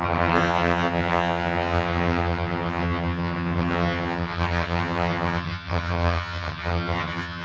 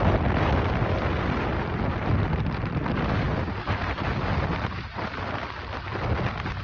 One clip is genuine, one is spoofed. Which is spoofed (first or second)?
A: first